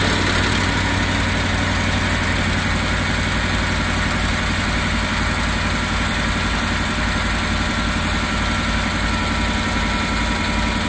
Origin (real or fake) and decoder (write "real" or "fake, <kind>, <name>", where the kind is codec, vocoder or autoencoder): real